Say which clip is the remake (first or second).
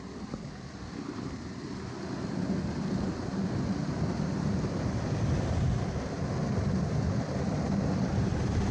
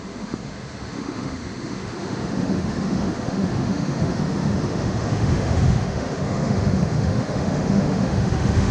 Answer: second